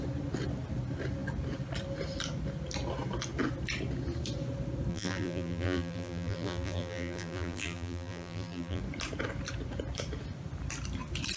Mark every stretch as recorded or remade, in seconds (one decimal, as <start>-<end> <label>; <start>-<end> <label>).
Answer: 0.0-4.9 recorded; 4.9-8.8 remade; 8.8-11.4 recorded